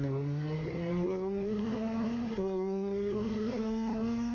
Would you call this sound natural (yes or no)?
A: no